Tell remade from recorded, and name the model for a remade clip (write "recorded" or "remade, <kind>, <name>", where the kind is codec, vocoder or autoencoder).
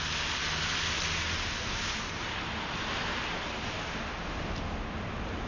recorded